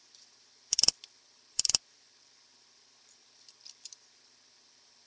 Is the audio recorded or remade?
remade